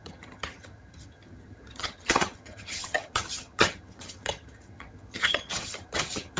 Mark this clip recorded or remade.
remade